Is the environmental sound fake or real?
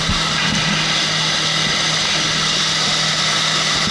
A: real